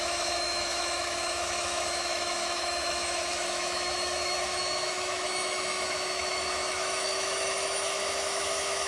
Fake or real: fake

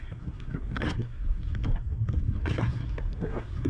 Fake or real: fake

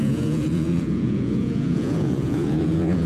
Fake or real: fake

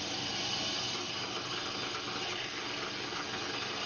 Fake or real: real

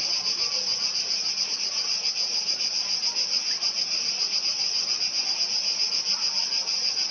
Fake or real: real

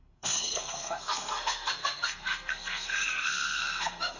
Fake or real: fake